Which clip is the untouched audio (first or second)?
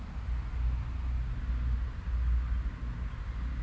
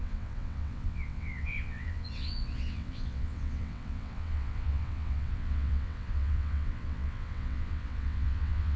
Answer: first